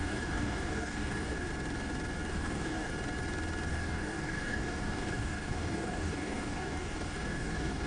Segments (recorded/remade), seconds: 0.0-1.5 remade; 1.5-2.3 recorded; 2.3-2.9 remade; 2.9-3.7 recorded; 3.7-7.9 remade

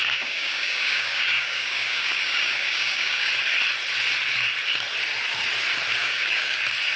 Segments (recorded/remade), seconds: 0.0-3.3 remade; 3.3-6.0 recorded; 6.0-6.6 remade; 6.6-7.0 recorded

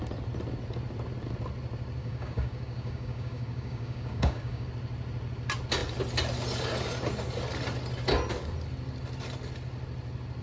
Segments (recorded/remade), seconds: 0.0-2.0 recorded; 2.0-4.7 remade; 4.7-10.4 recorded

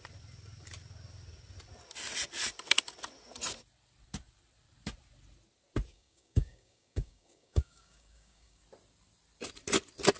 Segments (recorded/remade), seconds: 0.0-5.9 recorded; 5.9-8.6 remade; 8.6-10.2 recorded

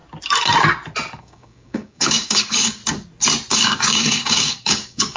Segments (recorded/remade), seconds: 0.0-1.2 recorded; 1.2-2.8 remade; 2.8-3.5 recorded; 3.5-5.2 remade

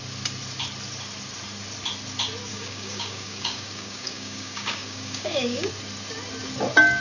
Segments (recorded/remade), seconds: 0.0-2.5 recorded; 2.5-5.7 remade; 5.7-7.0 recorded